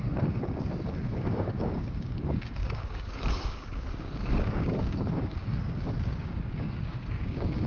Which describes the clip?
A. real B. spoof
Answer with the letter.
B